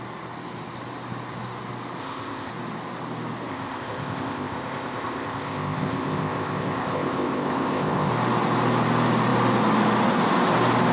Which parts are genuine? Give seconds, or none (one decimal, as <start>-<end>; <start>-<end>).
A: 0.0-2.0; 2.5-3.5; 8.1-10.9

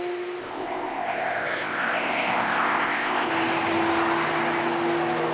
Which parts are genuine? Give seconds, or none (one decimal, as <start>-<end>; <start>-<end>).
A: 0.0-0.4; 3.3-5.3

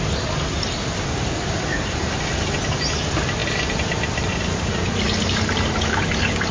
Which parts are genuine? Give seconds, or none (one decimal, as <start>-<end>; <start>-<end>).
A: 0.0-6.5